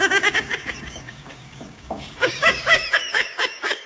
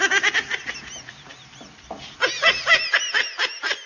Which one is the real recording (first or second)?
second